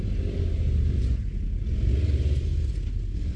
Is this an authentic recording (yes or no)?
yes